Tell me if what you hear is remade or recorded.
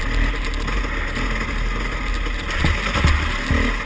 recorded